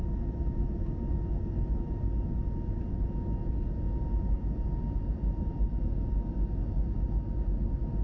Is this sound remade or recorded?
recorded